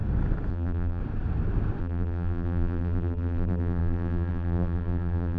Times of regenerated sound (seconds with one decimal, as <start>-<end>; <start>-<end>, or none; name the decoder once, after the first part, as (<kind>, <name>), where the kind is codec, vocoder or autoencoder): 0.5-1.0 (vocoder, BigVGAN v2); 1.8-5.4

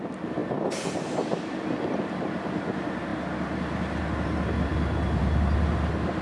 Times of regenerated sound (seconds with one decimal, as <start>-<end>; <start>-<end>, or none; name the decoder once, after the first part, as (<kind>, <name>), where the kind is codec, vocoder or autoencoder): none

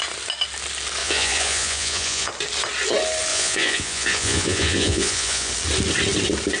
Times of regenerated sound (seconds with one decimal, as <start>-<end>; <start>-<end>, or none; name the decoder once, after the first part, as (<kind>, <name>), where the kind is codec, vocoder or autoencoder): 1.0-2.3 (vocoder, Vocos); 3.3-5.5

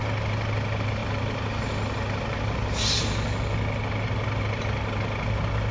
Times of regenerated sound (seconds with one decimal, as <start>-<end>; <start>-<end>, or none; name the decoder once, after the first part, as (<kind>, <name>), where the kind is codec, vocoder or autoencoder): none

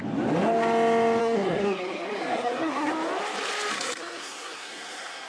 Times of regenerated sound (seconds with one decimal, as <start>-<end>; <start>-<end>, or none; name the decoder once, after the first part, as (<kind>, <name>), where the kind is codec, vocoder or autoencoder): 1.2-2.9 (codec, SNAC); 3.7-5.3